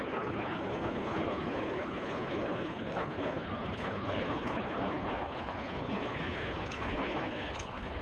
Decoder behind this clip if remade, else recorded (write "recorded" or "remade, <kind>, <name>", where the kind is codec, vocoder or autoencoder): remade, codec, HILCodec